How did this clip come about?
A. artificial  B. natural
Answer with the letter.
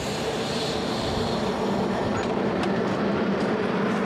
A